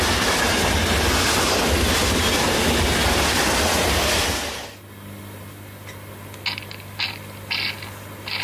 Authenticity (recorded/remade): recorded